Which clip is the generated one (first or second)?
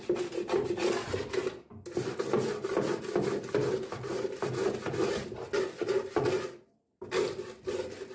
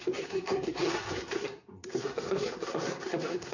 second